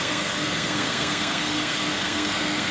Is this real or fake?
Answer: fake